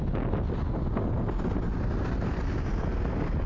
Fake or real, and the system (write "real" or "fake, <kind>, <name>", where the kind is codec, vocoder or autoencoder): real